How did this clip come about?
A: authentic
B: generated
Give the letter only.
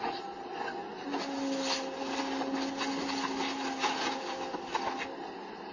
A